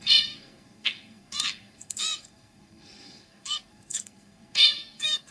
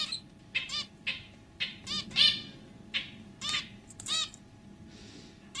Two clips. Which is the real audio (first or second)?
second